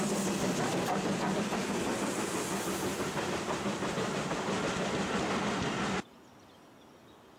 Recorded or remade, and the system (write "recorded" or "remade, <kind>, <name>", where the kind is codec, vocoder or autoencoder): recorded